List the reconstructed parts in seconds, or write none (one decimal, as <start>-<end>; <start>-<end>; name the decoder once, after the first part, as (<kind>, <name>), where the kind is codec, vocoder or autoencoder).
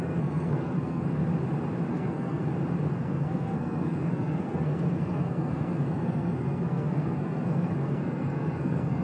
0.0-1.2 (codec, SNAC); 1.9-2.4; 2.9-9.0